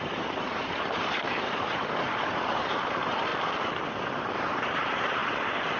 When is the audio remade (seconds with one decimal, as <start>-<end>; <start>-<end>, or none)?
0.0-3.3; 4.6-5.2